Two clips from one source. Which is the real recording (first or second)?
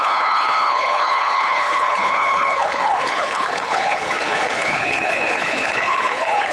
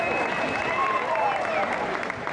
second